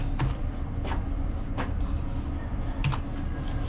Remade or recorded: recorded